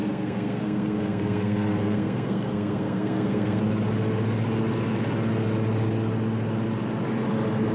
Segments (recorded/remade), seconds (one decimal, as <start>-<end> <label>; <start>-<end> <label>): 0.0-3.6 remade; 3.6-7.7 recorded